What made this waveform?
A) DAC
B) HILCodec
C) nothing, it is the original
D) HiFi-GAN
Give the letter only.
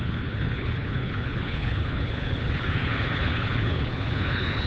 B